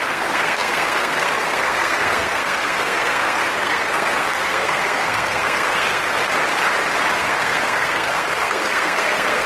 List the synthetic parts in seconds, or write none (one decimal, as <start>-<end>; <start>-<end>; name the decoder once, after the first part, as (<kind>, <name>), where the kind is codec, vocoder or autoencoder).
0.0-6.3 (codec, SNAC); 7.2-9.5